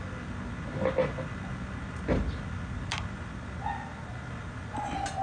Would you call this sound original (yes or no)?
yes